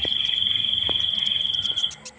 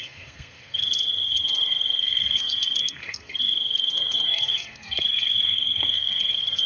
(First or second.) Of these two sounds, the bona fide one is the first